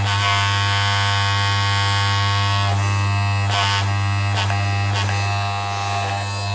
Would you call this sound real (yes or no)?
yes